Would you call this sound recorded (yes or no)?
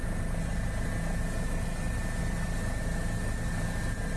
yes